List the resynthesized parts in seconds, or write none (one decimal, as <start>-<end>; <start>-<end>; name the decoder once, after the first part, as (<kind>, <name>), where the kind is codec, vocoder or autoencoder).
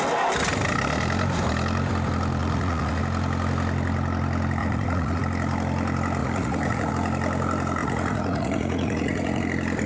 2.4-3.0 (vocoder, Vocos); 4.6-5.2; 6.2-6.9; 7.8-9.4